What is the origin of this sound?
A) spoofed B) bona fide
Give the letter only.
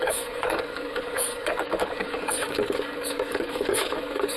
A